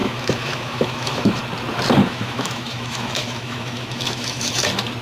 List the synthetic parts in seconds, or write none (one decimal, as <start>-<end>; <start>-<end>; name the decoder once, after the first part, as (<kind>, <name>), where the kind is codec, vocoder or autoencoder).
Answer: 0.0-1.4 (autoencoder, DAC-VAE); 2.0-4.5